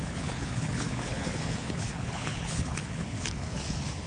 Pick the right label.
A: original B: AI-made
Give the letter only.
B